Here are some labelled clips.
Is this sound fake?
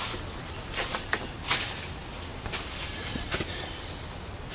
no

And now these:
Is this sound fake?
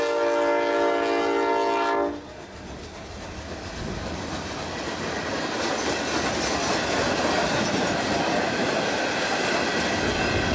no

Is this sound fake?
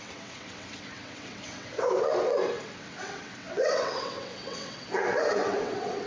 yes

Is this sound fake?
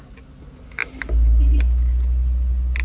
no